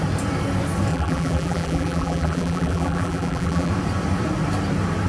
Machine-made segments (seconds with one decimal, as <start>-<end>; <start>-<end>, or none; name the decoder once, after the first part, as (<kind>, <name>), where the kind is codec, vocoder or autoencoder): 0.9-3.7 (vocoder, BigVGAN v2)